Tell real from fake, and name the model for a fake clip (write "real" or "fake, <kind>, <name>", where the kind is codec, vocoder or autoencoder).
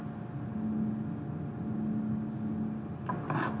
real